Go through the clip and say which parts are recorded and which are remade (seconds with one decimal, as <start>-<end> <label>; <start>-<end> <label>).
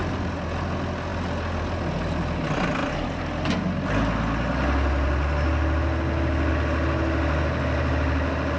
0.0-8.6 recorded